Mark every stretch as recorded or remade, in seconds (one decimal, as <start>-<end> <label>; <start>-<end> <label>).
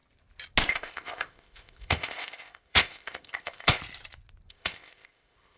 0.0-0.7 recorded; 0.7-3.8 remade; 3.8-4.5 recorded; 4.5-5.6 remade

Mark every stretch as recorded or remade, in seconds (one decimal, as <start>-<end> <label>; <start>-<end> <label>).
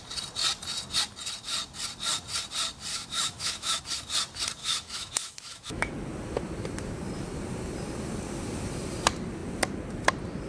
0.0-2.9 recorded; 2.9-3.8 remade; 3.8-4.6 recorded; 4.6-5.9 remade; 5.9-10.5 recorded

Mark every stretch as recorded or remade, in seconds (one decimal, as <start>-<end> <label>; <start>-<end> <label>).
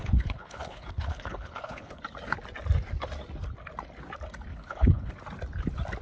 0.0-2.0 remade; 2.0-4.5 recorded; 4.5-5.1 remade; 5.1-6.0 recorded